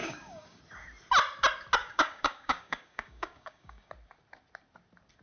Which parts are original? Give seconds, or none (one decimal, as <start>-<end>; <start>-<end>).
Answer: 0.6-1.8; 3.9-5.2